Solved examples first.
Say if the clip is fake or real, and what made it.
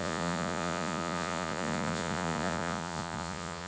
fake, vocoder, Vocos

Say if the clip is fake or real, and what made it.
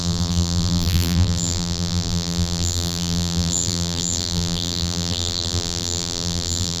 fake, vocoder, BigVGAN v2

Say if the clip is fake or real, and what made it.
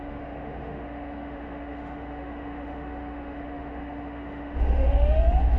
fake, autoencoder, DAC-VAE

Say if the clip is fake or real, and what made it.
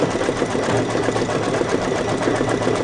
real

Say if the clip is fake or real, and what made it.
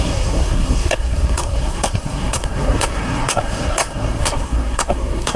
fake, codec, SNAC